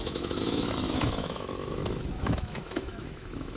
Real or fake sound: fake